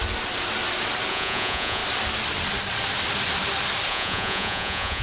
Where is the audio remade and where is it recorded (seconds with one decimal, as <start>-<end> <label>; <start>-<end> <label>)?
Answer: 0.0-1.1 recorded; 1.1-1.8 remade; 1.8-3.9 recorded; 3.9-5.0 remade